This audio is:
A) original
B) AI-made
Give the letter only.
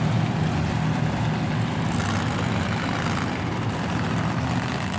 A